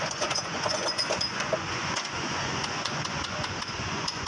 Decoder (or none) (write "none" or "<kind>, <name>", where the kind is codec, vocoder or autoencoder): vocoder, Vocos